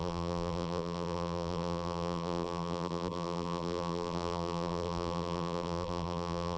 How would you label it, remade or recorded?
remade